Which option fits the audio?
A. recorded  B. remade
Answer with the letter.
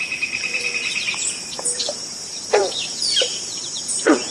B